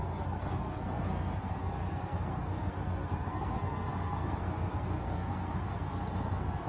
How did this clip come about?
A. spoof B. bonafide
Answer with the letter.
A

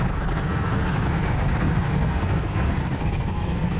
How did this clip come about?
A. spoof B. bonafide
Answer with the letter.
A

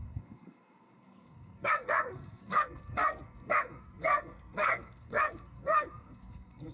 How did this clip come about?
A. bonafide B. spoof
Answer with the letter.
B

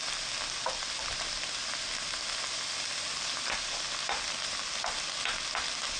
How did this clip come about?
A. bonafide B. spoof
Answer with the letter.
A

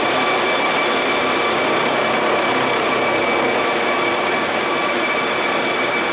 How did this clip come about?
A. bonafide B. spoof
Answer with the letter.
A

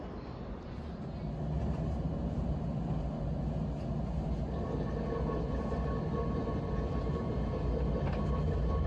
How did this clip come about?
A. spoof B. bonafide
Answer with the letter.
B